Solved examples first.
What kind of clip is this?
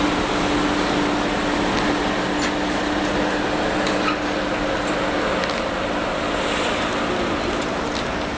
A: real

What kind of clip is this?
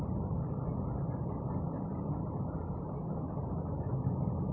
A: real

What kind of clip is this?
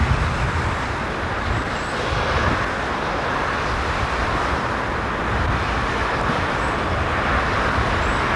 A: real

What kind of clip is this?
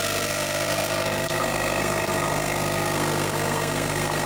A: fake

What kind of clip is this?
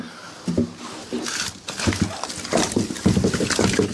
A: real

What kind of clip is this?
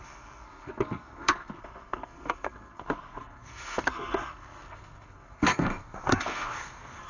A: fake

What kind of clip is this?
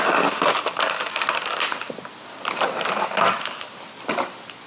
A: real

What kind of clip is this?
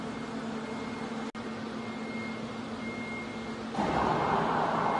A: real